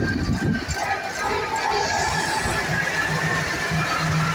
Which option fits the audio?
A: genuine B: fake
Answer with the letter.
A